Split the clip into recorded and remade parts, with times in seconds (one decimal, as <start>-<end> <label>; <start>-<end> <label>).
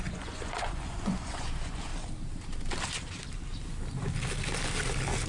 0.0-1.9 remade; 1.9-5.3 recorded